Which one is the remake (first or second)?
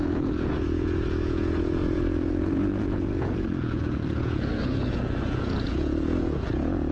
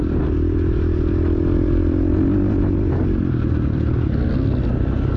first